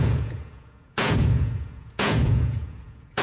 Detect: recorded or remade remade